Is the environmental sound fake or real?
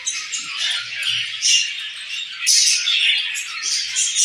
real